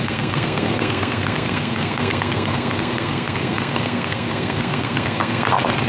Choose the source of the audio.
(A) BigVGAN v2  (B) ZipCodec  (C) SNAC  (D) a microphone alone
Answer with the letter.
C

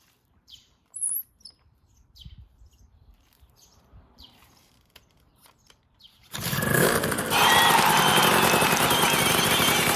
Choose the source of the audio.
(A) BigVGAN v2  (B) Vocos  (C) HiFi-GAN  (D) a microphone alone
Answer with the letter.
A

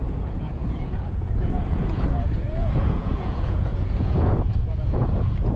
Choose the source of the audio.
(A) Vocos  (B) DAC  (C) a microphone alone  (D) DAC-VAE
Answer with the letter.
A